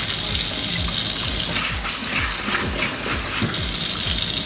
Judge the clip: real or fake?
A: real